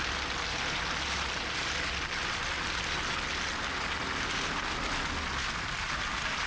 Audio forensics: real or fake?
real